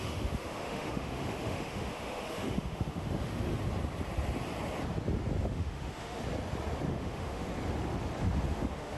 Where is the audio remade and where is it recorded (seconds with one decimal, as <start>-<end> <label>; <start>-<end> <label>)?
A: 0.0-3.5 remade; 3.5-5.4 recorded; 5.4-6.2 remade; 6.2-6.9 recorded; 6.9-7.5 remade; 7.5-8.5 recorded; 8.5-9.0 remade